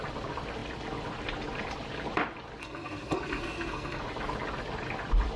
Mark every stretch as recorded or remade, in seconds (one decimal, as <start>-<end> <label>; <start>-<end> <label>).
0.0-2.6 recorded; 2.6-4.0 remade; 4.0-5.4 recorded

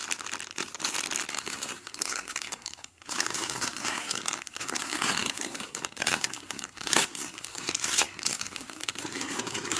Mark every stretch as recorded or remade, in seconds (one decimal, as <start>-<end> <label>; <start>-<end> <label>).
0.0-1.3 recorded; 1.3-9.8 remade

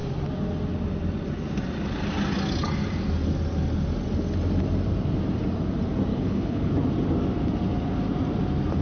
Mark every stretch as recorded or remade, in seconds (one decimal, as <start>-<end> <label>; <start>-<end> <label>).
0.0-6.1 recorded; 6.1-6.7 remade; 6.7-8.8 recorded